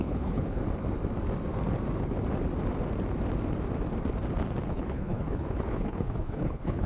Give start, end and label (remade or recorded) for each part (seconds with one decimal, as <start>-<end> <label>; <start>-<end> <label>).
0.0-0.6 remade; 0.6-4.7 recorded; 4.7-6.9 remade